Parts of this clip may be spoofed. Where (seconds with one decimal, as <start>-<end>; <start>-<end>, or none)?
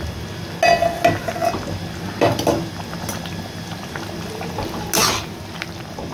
none